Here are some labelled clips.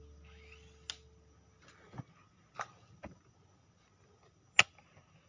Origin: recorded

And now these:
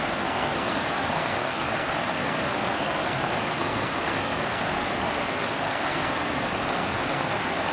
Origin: remade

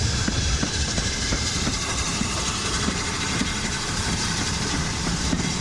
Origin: remade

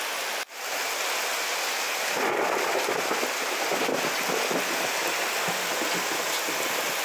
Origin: recorded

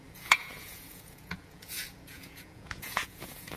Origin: remade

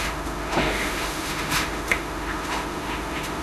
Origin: remade